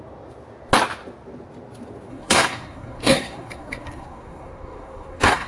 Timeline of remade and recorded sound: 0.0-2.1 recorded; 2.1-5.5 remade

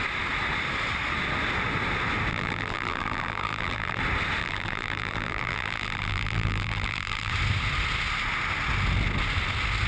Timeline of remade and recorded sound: 0.0-2.3 recorded; 2.3-4.0 remade; 4.0-4.4 recorded; 4.4-7.3 remade; 7.3-9.9 recorded

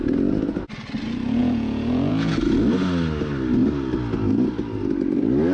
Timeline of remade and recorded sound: 0.0-1.4 recorded; 1.4-2.3 remade; 2.3-5.5 recorded

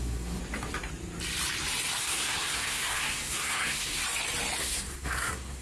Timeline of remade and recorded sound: 0.0-0.4 remade; 0.4-2.0 recorded; 2.0-4.0 remade; 4.0-4.6 recorded; 4.6-5.6 remade